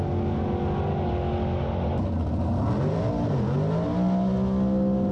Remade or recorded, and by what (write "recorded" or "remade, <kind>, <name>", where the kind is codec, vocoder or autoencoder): recorded